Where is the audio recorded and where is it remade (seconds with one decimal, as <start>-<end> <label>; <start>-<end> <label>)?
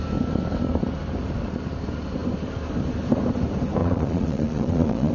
0.0-3.8 recorded; 3.8-5.1 remade